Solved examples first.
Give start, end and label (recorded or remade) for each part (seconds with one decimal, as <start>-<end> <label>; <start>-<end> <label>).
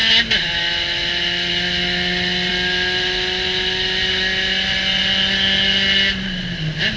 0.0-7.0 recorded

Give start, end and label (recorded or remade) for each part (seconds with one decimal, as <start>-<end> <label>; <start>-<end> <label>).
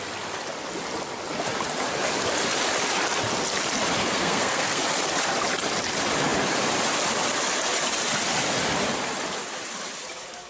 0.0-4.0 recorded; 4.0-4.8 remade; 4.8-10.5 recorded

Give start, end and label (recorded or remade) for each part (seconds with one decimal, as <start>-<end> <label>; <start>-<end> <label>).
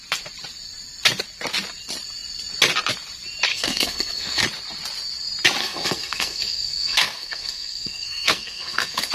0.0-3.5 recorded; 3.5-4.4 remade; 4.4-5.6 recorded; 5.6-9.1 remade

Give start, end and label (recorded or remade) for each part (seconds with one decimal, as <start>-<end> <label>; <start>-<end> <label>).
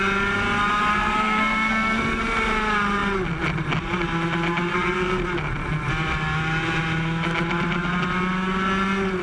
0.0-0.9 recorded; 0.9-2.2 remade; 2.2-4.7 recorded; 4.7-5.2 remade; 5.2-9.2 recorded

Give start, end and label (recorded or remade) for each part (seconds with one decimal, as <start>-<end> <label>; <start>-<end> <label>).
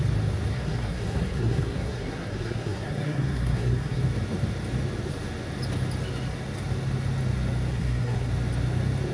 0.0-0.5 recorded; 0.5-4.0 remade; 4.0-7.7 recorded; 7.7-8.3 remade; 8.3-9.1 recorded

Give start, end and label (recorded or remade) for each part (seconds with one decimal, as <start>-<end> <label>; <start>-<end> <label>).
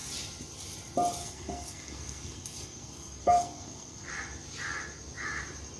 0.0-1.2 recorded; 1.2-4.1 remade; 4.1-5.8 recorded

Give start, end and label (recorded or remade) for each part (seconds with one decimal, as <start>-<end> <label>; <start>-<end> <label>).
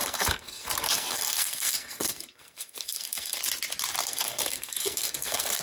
0.0-3.4 remade; 3.4-4.0 recorded; 4.0-5.6 remade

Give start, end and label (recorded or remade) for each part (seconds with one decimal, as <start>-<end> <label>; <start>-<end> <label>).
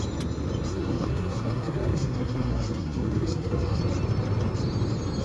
0.0-0.7 recorded; 0.7-3.8 remade; 3.8-5.2 recorded